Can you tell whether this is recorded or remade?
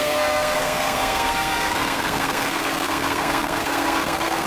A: remade